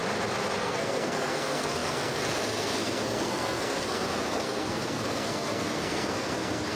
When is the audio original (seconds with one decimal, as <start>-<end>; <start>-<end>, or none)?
0.0-0.6